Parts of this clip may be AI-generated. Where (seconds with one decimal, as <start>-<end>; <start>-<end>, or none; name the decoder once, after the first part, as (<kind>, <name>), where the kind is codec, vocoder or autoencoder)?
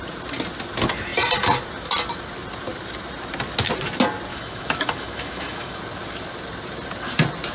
4.3-5.8 (autoencoder, DAC-VAE)